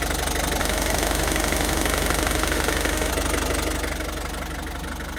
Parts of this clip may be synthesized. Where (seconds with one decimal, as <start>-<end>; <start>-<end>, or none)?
0.6-3.1

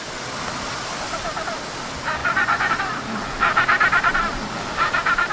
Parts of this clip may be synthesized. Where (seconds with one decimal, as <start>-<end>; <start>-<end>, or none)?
2.2-2.7

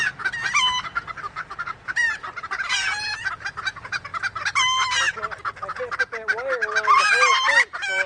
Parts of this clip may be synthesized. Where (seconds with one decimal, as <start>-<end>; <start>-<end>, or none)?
0.9-3.0; 6.6-7.1